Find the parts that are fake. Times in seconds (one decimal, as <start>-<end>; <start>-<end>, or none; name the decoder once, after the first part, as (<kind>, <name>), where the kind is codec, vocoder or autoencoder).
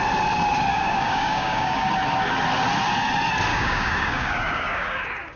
0.7-1.9 (codec, DAC); 3.5-5.4